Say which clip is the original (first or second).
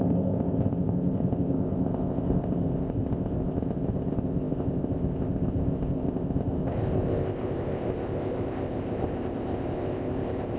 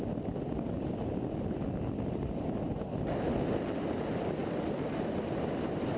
second